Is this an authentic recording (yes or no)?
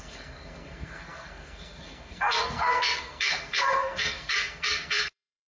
no